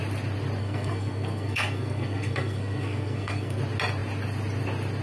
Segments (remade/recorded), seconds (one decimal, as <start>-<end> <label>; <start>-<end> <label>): 0.0-0.6 recorded; 0.6-3.6 remade; 3.6-5.0 recorded